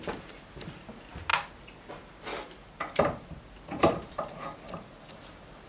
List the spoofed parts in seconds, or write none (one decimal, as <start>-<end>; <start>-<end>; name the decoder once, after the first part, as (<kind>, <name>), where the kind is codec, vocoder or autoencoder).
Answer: none